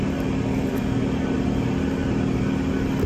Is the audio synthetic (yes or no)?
no